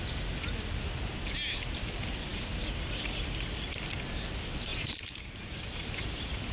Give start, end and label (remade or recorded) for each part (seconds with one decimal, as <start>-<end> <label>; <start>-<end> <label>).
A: 0.0-2.3 recorded; 2.3-4.3 remade; 4.3-4.7 recorded; 4.7-6.1 remade; 6.1-6.5 recorded